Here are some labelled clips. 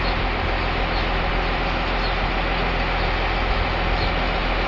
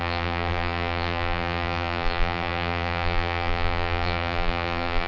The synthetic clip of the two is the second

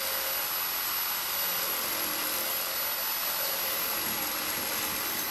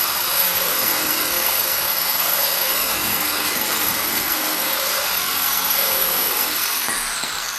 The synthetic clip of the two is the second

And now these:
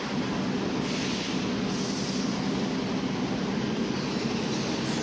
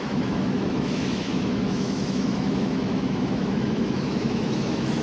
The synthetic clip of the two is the second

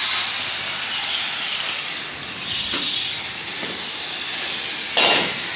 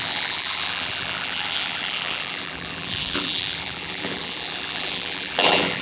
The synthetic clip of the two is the second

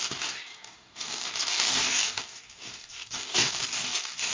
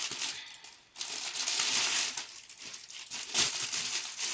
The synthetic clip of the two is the first